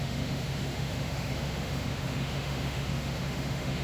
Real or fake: fake